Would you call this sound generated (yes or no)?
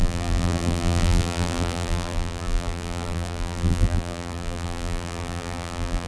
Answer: yes